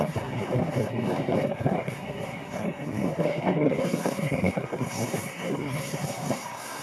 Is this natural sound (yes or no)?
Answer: no